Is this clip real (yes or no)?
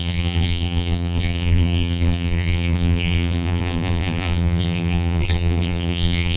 no